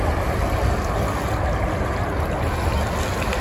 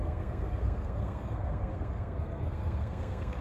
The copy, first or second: second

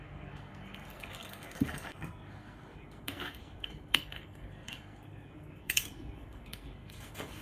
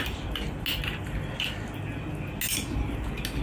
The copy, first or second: first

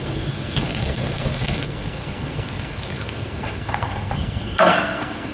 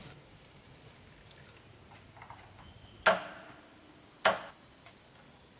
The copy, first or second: first